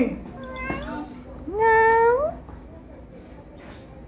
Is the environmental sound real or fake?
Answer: real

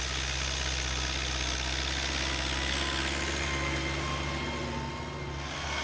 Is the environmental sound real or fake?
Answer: real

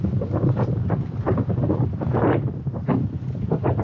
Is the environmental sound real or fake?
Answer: real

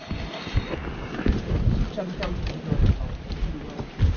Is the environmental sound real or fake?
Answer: real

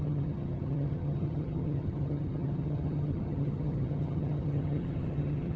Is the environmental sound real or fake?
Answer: fake